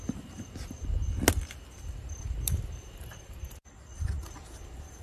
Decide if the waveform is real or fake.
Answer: real